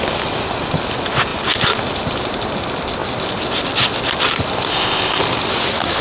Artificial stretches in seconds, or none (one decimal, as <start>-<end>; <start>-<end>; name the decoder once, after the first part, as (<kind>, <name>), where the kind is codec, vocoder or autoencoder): 4.7-5.2 (codec, ZipCodec)